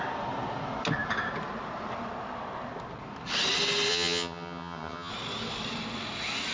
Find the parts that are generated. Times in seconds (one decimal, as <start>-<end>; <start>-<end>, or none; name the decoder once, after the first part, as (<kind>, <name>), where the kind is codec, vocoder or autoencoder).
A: 3.9-5.1 (vocoder, HiFi-GAN)